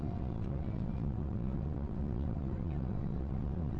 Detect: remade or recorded remade